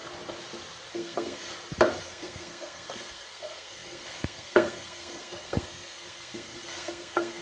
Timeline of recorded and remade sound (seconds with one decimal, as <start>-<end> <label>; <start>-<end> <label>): 0.0-0.9 recorded; 0.9-1.5 remade; 1.5-2.0 recorded; 2.0-7.4 remade